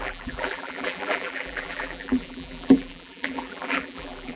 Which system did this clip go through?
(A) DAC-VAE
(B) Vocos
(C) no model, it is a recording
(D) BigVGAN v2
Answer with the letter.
D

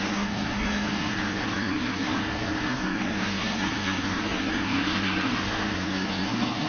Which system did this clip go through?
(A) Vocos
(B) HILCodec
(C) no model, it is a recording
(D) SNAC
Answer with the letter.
D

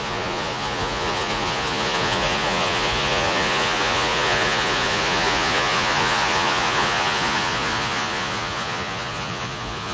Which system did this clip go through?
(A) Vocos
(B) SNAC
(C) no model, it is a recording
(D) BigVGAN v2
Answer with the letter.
A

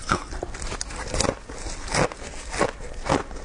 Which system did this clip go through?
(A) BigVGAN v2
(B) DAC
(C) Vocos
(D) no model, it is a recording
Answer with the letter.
D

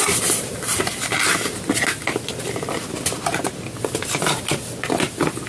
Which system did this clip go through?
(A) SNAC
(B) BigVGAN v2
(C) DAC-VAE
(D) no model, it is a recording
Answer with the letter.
D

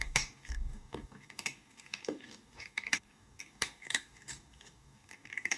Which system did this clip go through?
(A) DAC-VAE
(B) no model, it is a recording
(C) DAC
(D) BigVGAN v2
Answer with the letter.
C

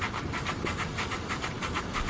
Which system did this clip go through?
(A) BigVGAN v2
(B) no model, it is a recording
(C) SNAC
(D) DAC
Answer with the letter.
B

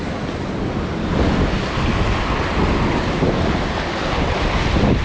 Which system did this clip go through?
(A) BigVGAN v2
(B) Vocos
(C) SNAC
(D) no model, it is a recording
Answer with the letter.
D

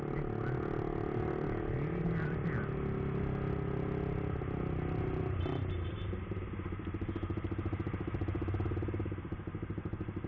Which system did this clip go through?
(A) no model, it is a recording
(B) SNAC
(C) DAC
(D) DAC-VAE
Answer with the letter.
A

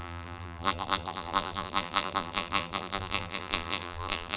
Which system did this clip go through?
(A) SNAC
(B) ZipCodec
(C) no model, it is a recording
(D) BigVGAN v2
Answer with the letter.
D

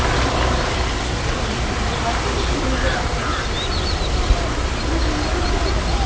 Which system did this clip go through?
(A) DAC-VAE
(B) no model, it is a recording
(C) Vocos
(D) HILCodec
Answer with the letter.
B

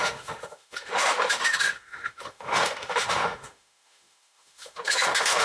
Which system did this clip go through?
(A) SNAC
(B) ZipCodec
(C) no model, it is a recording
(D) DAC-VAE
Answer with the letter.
D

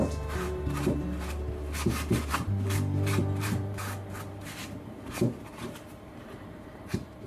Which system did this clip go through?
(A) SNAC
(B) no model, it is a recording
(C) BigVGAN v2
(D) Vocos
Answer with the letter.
C